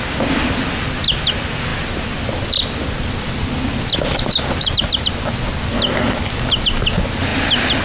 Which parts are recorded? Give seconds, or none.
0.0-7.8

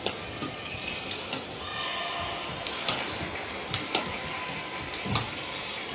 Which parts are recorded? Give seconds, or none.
0.0-5.9

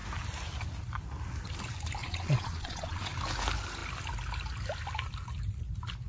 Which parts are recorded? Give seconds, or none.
0.0-2.0; 3.1-6.1

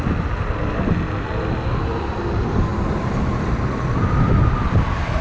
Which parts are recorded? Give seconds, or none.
0.0-5.2

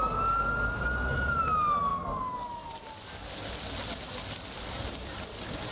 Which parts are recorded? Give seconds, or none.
0.0-5.7